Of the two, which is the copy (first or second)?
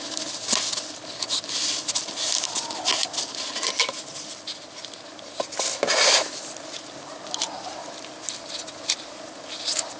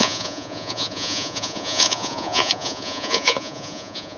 second